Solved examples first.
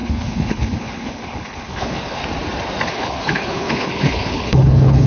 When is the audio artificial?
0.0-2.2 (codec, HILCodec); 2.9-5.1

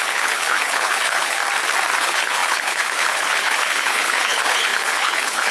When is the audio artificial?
0.0-1.4 (codec, HILCodec); 2.0-5.5

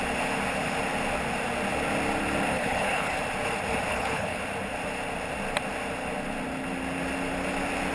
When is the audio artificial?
2.5-3.2 (codec, HILCodec); 3.9-4.4

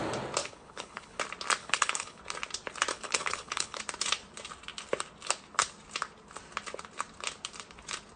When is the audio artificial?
0.4-1.2 (codec, HILCodec); 1.6-2.2; 2.9-3.8

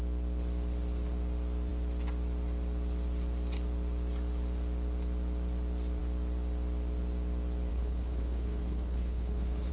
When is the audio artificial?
7.7-9.7 (codec, HILCodec)